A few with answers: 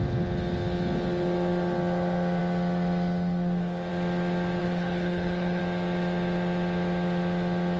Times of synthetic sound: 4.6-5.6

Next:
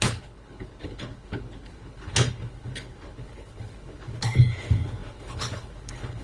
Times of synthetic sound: 0.0-6.2

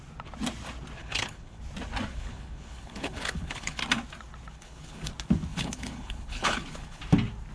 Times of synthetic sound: 1.0-1.6; 2.1-3.8; 4.5-5.1; 5.5-7.0

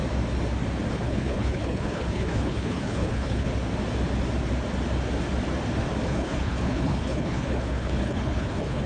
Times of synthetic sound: 0.9-3.5; 6.1-8.9